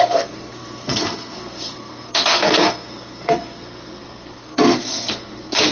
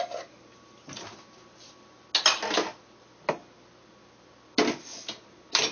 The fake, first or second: first